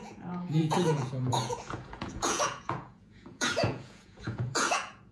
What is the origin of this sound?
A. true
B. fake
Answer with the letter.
B